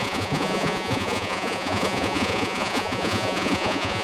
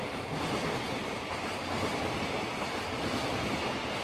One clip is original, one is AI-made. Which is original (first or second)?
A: second